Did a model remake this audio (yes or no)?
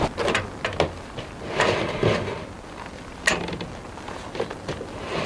no